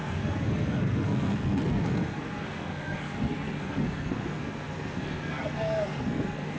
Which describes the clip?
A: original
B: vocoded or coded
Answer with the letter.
B